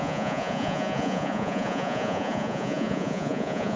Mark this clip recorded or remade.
remade